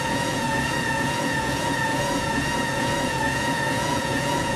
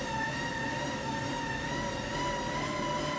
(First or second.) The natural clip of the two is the second